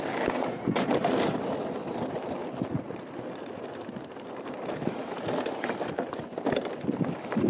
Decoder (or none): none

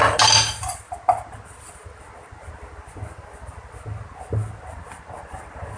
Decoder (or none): none